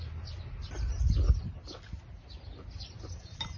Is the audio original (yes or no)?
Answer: yes